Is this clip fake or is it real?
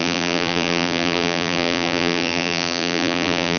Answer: fake